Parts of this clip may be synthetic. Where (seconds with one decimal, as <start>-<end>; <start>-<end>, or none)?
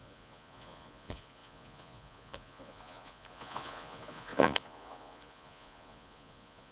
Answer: 0.0-6.7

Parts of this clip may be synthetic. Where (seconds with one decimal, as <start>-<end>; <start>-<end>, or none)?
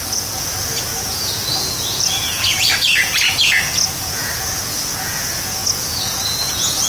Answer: 0.0-6.9